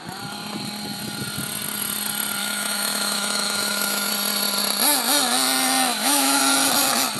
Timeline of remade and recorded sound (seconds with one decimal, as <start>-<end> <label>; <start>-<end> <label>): 0.0-2.4 recorded; 2.4-4.1 remade; 4.1-5.9 recorded; 5.9-6.4 remade; 6.4-7.2 recorded